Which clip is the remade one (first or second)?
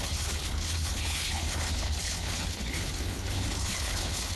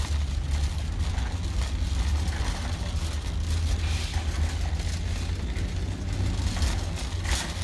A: first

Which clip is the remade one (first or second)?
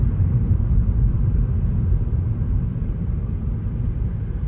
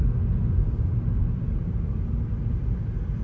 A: first